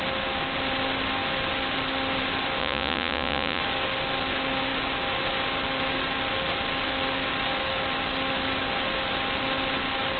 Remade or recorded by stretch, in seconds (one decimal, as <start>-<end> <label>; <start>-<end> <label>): 0.0-2.6 recorded; 2.6-3.6 remade; 3.6-10.2 recorded